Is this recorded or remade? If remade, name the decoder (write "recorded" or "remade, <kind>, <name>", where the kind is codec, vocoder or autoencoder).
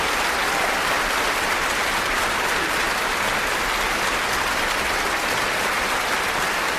recorded